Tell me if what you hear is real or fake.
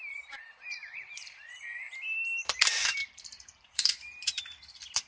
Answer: fake